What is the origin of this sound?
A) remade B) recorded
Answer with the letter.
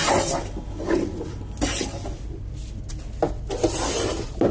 B